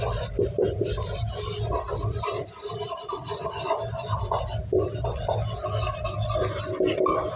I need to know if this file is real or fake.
fake